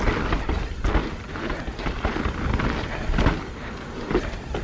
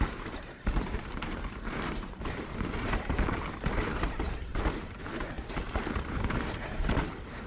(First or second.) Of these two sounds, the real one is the first